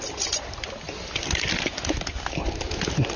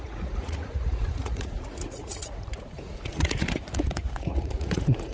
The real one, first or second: first